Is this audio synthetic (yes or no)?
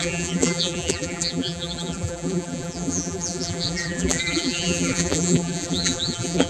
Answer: yes